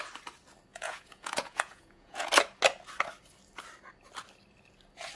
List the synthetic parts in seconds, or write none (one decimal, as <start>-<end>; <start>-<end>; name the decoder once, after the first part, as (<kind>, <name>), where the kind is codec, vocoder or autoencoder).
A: 0.7-2.3 (vocoder, Vocos)